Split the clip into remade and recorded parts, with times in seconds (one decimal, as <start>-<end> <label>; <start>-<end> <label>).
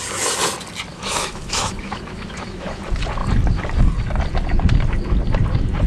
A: 0.0-0.9 recorded; 0.9-2.8 remade; 2.8-5.9 recorded